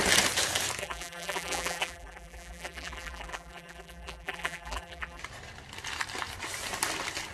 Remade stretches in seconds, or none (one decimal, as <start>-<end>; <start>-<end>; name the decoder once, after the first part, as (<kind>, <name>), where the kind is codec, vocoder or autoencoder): 0.8-5.2 (vocoder, BigVGAN v2)